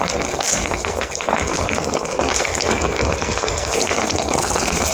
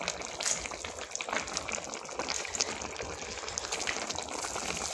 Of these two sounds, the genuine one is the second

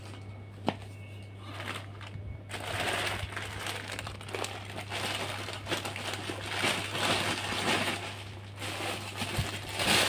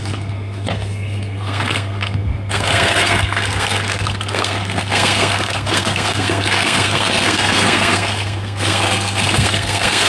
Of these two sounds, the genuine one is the first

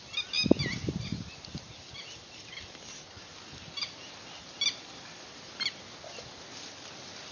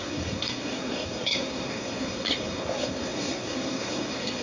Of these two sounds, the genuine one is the first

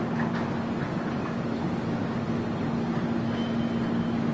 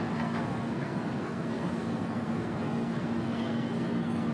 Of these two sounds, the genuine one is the first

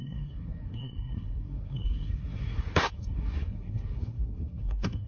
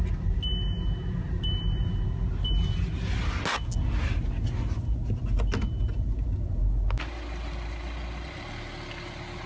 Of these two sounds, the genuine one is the second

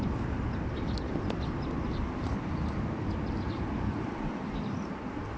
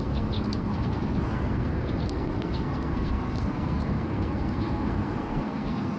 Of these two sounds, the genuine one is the first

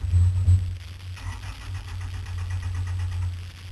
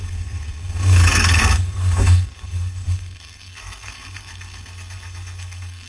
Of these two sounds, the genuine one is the first